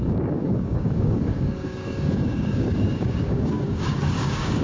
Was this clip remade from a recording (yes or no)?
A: yes